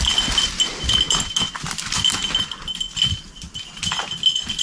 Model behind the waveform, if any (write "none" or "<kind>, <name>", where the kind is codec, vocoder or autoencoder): none